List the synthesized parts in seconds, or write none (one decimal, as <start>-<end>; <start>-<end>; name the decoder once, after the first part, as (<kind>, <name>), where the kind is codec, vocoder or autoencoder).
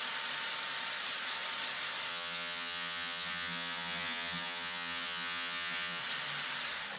2.1-6.0 (vocoder, HiFi-GAN)